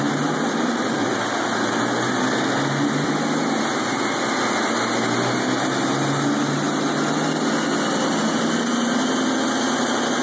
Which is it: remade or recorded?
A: recorded